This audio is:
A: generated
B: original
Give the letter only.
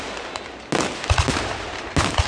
B